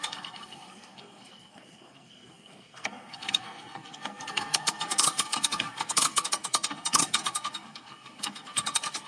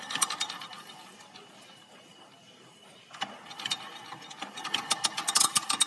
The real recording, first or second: second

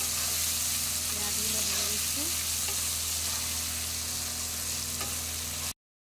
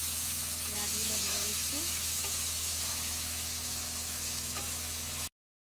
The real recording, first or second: first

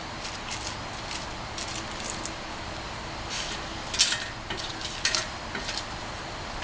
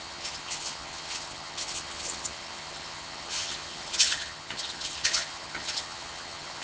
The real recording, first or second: first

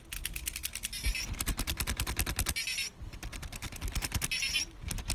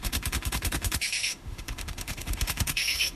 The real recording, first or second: first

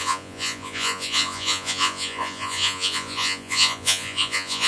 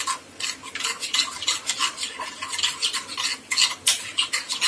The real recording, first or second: second